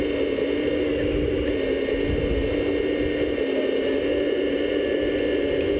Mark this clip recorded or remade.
recorded